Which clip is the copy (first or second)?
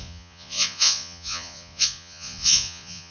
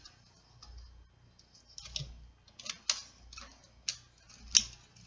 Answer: first